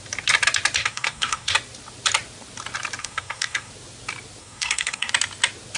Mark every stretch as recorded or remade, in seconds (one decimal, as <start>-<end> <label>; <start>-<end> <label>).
0.0-0.8 recorded; 0.8-1.5 remade; 1.5-3.0 recorded; 3.0-3.7 remade; 3.7-4.4 recorded; 4.4-5.1 remade; 5.1-5.8 recorded